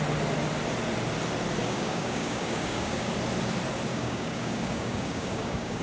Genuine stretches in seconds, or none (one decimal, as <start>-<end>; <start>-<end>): 0.0-1.6; 3.1-3.9